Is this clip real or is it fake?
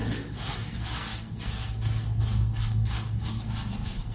fake